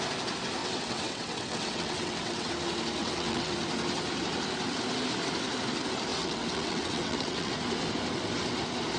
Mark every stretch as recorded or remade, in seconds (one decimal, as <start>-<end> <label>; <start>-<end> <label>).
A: 0.0-0.6 recorded; 0.6-2.5 remade; 2.5-3.0 recorded; 3.0-3.5 remade; 3.5-6.1 recorded; 6.1-7.5 remade; 7.5-9.0 recorded